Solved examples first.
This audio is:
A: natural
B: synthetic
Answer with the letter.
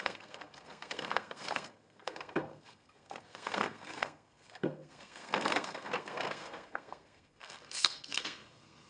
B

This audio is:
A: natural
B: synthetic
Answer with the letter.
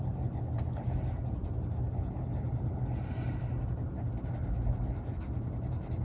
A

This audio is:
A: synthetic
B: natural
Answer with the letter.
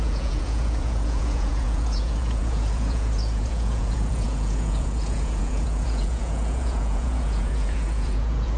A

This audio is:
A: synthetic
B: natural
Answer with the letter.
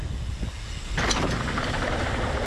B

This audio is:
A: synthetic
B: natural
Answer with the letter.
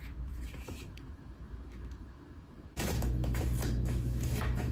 A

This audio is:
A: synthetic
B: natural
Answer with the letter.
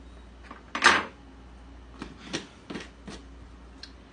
B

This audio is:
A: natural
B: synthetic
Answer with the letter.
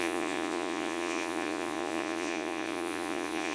B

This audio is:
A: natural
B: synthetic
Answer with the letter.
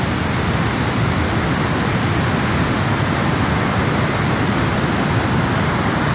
A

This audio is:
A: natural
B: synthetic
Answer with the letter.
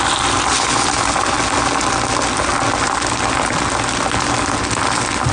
A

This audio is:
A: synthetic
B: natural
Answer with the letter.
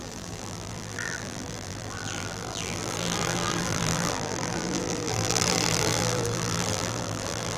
A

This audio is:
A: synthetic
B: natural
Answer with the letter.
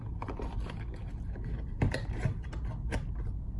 B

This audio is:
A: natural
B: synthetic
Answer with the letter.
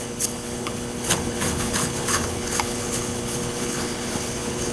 B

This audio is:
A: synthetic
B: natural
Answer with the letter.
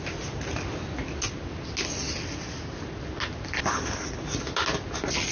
B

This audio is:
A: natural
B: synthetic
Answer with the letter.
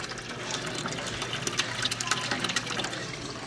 A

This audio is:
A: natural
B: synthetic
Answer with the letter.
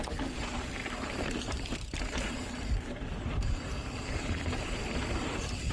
B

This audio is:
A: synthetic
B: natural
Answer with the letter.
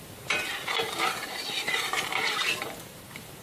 A